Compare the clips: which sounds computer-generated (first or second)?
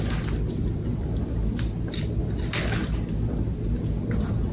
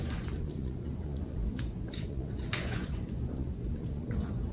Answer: second